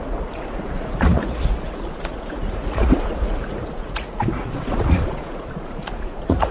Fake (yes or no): yes